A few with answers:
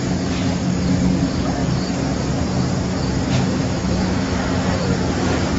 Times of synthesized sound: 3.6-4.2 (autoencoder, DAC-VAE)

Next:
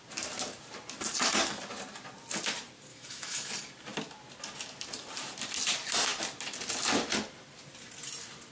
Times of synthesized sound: 2.9-3.5 (autoencoder, DAC-VAE)

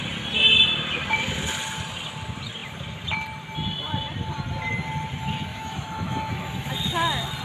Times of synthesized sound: 5.5-6.7 (autoencoder, DAC-VAE)

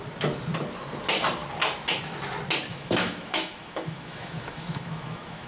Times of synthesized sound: 2.7-5.5 (autoencoder, DAC-VAE)

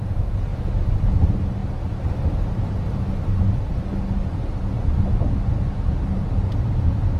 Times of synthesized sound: none

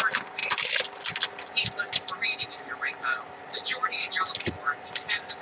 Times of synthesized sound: none